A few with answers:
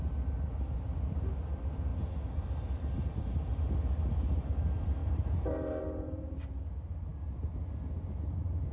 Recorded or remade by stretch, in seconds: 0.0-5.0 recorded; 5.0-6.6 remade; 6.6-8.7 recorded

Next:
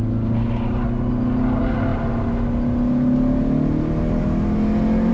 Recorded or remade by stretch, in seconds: 0.0-5.1 recorded

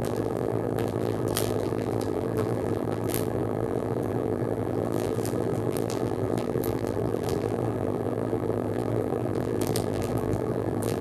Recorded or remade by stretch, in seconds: 0.0-11.0 remade

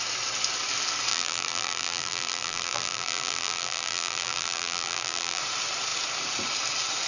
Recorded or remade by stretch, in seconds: 0.0-1.1 recorded; 1.1-5.4 remade; 5.4-7.1 recorded

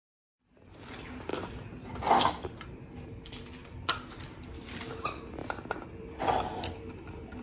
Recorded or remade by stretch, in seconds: 0.0-1.3 remade; 1.3-1.8 recorded; 1.8-5.4 remade; 5.4-6.0 recorded; 6.0-7.4 remade

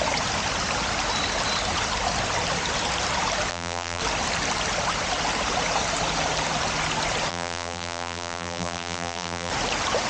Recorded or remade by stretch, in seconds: 0.0-3.5 recorded; 3.5-4.0 remade; 4.0-7.3 recorded; 7.3-9.5 remade; 9.5-10.1 recorded